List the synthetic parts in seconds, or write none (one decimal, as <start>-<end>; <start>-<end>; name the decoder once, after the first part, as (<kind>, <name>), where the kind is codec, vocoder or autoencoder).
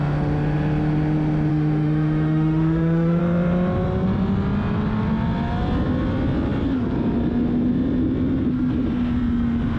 1.5-3.2 (autoencoder, DAC-VAE)